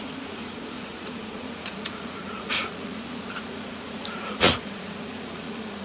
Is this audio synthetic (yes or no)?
yes